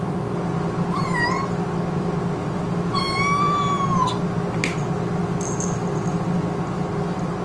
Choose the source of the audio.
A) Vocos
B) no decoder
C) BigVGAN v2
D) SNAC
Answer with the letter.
B